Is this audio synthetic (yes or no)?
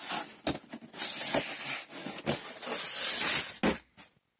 no